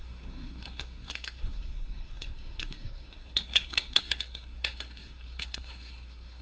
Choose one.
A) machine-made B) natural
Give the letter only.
A